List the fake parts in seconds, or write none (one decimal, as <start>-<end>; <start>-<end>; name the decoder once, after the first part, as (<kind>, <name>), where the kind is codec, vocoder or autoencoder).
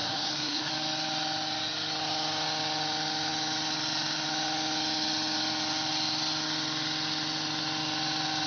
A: 0.0-0.7 (codec, SNAC)